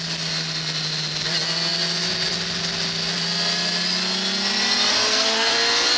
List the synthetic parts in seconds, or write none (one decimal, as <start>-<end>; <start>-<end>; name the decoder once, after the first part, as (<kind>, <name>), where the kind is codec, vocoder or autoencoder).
4.9-5.5 (codec, SNAC)